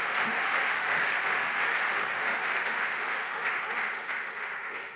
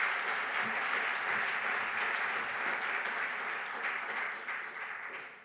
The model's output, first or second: first